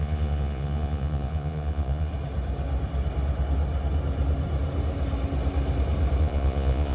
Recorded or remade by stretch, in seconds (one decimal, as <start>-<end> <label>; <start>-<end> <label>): 0.0-2.1 remade; 2.1-6.2 recorded; 6.2-6.9 remade